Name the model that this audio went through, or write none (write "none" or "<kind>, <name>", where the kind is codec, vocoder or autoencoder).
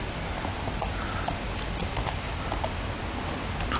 none